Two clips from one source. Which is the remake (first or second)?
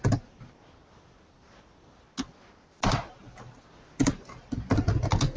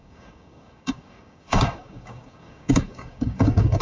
second